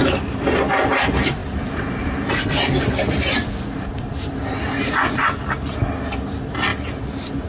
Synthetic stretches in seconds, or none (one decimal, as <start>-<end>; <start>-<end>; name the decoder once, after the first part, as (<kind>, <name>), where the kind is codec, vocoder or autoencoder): 1.4-4.9 (vocoder, BigVGAN v2); 6.7-7.5